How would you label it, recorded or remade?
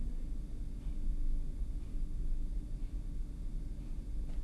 recorded